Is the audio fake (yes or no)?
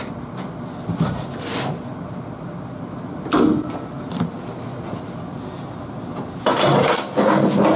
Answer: no